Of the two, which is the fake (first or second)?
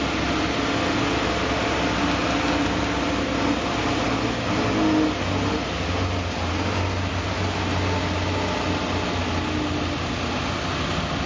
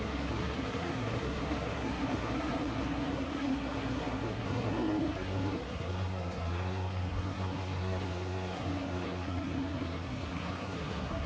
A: second